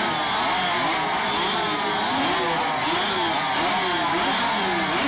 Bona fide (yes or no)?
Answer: yes